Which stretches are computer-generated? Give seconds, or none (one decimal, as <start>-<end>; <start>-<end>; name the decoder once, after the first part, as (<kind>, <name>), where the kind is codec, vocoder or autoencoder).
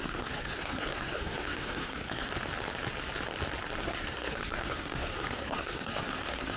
0.0-2.3 (codec, SNAC); 3.8-6.6